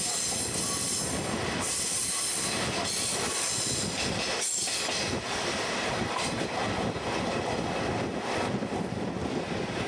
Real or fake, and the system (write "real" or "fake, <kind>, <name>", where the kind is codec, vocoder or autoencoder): real